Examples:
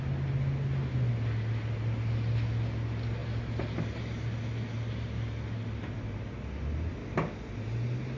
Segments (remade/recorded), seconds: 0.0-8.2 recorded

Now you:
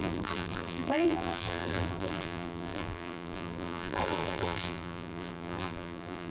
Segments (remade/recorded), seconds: 0.0-6.3 remade

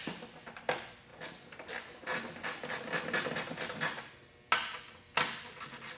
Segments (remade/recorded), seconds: 0.0-1.1 recorded; 1.1-3.0 remade; 3.0-6.0 recorded

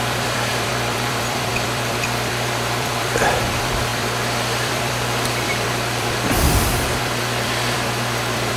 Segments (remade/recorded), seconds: 0.0-8.6 remade

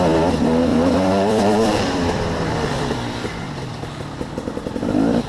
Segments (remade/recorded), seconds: 0.0-0.7 recorded; 0.7-3.9 remade; 3.9-5.3 recorded

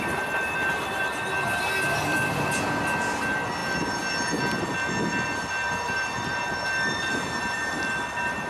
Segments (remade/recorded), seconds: 0.0-3.6 recorded; 3.6-4.4 remade; 4.4-8.5 recorded

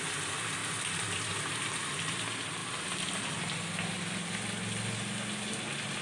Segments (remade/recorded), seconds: 0.0-0.6 recorded; 0.6-2.1 remade; 2.1-2.6 recorded; 2.6-3.2 remade; 3.2-6.0 recorded